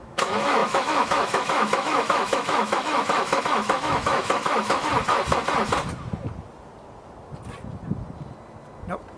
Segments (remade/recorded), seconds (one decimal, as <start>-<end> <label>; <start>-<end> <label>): 0.0-4.9 remade; 4.9-9.2 recorded